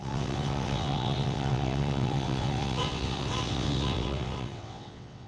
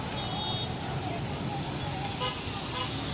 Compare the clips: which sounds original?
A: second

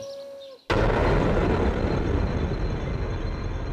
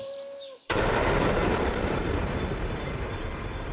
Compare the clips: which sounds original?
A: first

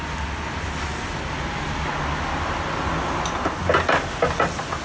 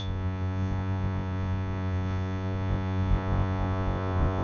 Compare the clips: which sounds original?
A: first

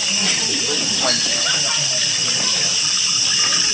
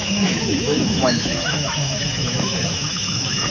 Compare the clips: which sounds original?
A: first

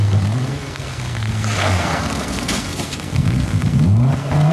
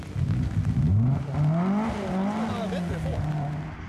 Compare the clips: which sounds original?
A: second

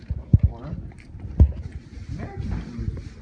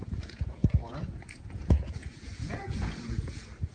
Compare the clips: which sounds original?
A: first